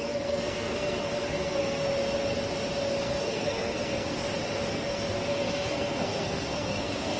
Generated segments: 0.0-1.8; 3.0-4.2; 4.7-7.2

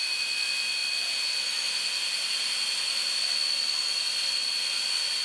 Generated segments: none

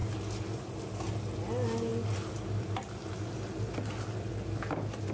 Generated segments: none